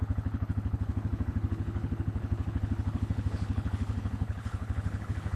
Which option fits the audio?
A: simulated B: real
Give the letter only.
A